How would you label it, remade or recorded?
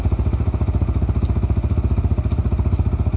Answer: recorded